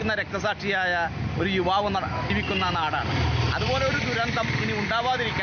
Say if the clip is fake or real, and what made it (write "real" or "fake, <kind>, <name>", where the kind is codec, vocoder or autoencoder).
real